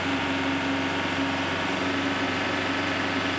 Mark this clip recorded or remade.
recorded